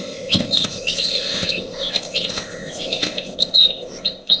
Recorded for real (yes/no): no